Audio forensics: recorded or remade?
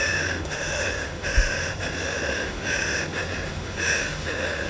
remade